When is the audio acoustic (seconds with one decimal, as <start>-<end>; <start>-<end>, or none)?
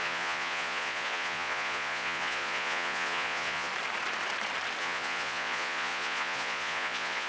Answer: 3.7-4.8